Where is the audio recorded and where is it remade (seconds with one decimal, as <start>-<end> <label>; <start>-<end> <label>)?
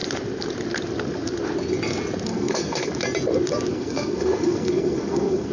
0.0-2.3 recorded; 2.3-2.9 remade; 2.9-3.7 recorded; 3.7-5.5 remade